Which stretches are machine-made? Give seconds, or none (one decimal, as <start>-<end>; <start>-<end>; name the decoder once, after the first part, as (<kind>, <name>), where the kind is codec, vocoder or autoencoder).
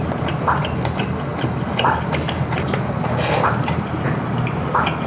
none